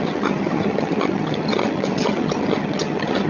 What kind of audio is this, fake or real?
fake